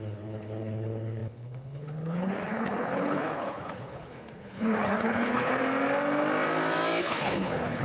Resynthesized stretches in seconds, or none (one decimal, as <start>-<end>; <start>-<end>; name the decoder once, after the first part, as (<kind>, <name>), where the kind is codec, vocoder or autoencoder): 0.0-5.6 (codec, HILCodec); 7.0-7.8